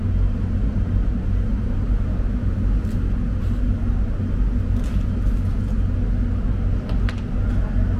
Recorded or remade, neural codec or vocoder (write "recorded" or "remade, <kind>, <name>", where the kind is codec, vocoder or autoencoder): recorded